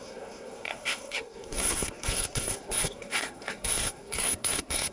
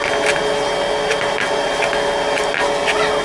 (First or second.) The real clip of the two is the second